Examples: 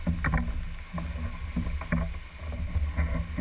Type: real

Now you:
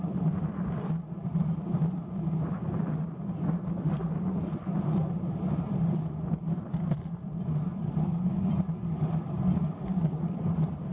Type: real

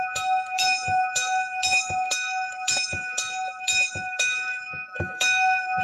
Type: fake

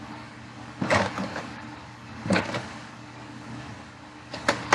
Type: fake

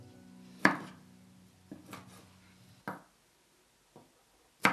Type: real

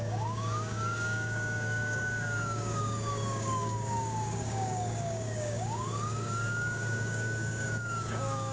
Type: fake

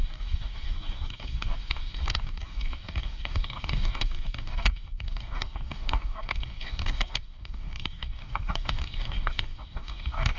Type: fake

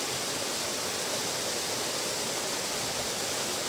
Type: real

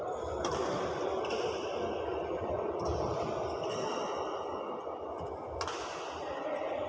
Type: real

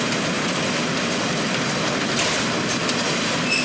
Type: real